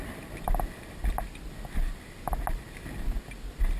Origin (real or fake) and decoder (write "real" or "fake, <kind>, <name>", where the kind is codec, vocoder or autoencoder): real